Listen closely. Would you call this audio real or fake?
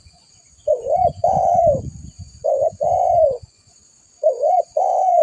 fake